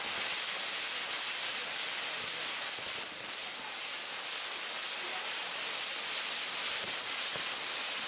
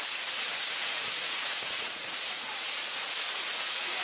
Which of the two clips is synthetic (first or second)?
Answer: second